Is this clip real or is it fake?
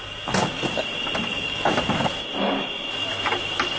real